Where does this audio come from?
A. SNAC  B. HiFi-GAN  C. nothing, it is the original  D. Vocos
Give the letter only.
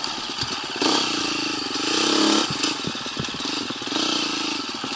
C